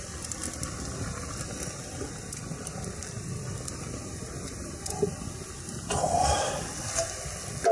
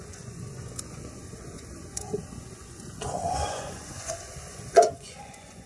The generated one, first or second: second